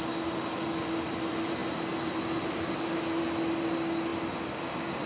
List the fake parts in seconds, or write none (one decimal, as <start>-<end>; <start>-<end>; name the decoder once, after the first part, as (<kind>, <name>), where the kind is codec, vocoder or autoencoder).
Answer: none